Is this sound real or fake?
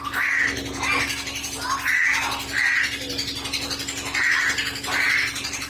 real